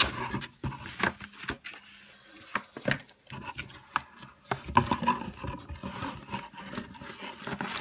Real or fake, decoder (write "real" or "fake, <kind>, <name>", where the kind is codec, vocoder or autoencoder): real